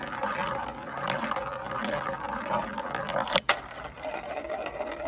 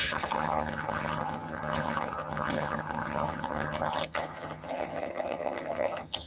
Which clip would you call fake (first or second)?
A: second